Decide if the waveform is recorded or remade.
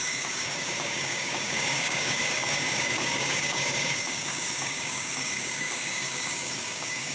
remade